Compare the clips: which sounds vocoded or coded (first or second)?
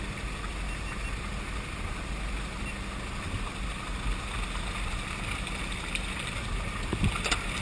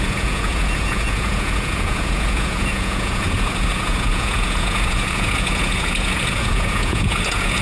second